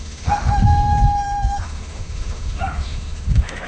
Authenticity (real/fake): fake